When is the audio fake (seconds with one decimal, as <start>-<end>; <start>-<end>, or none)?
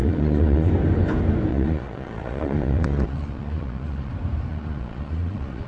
0.0-0.7; 1.5-4.1; 4.5-5.7